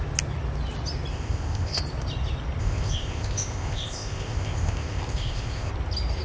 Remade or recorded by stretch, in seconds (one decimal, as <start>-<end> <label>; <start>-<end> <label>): 0.0-1.1 recorded; 1.1-1.8 remade; 1.8-2.6 recorded; 2.6-5.7 remade; 5.7-6.2 recorded